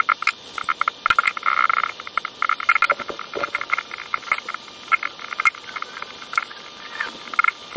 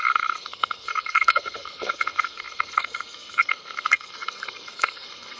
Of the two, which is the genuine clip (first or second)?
first